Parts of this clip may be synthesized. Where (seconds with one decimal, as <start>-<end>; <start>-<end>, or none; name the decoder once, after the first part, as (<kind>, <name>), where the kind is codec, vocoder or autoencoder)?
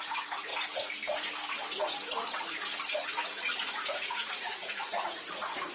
0.0-0.5 (vocoder, Vocos); 3.7-5.7